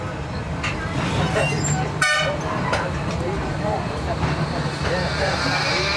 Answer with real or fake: real